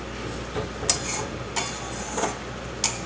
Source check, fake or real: real